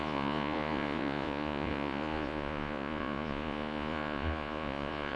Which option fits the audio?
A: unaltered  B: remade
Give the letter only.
B